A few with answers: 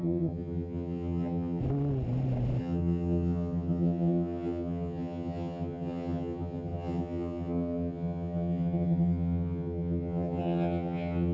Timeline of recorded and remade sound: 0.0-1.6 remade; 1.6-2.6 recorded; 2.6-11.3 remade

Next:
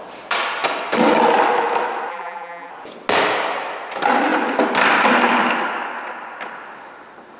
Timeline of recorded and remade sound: 0.0-2.1 recorded; 2.1-2.7 remade; 2.7-7.4 recorded

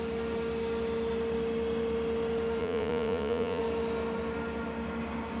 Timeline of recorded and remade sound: 0.0-2.6 recorded; 2.6-3.6 remade; 3.6-5.4 recorded

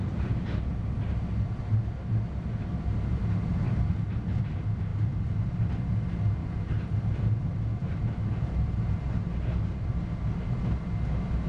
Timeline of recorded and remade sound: 0.0-0.6 remade; 0.6-6.4 recorded; 6.4-6.9 remade; 6.9-7.8 recorded; 7.8-10.0 remade; 10.0-11.5 recorded

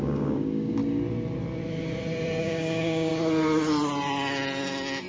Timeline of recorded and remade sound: 0.0-0.8 remade; 0.8-2.4 recorded; 2.4-3.1 remade; 3.1-5.1 recorded